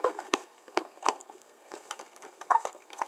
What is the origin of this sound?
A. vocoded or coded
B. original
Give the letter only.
A